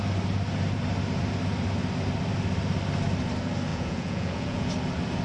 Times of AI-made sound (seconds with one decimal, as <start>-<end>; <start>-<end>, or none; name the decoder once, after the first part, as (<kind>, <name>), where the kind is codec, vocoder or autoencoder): 3.7-4.7 (vocoder, Vocos)

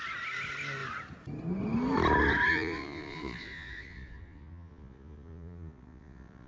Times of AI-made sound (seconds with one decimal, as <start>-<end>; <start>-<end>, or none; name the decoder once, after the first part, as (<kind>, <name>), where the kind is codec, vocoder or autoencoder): 2.5-6.5 (vocoder, Vocos)

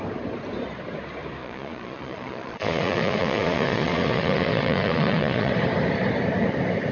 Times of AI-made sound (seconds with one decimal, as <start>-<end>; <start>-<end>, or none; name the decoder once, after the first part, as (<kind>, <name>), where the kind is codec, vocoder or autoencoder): 1.4-5.5 (vocoder, Vocos)

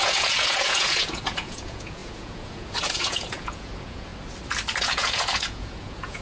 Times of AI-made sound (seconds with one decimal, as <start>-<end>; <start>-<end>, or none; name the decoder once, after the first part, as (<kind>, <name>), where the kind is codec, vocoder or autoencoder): 0.0-4.1 (vocoder, Vocos); 4.8-6.2

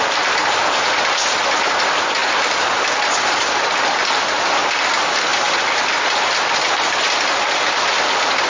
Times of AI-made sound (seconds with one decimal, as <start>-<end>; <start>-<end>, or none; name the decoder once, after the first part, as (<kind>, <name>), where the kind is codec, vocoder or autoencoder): none

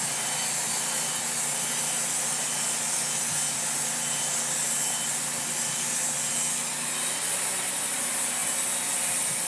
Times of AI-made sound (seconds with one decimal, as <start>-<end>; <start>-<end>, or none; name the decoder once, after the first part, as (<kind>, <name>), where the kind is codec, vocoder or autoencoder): none

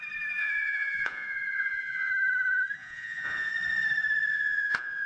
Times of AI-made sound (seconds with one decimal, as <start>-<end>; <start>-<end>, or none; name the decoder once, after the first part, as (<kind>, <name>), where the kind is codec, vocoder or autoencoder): 0.4-2.1 (vocoder, Vocos); 2.8-3.5; 4.3-5.1